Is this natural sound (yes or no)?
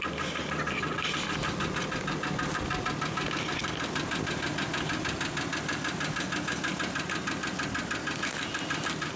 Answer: yes